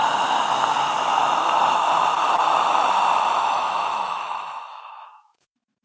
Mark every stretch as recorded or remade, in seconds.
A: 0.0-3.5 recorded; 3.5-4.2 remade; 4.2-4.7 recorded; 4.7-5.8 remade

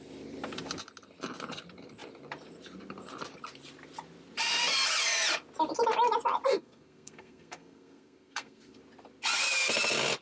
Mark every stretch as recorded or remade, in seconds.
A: 0.0-6.5 recorded; 6.5-8.8 remade; 8.8-10.2 recorded